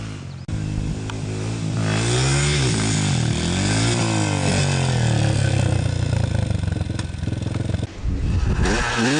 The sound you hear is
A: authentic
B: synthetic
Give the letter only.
A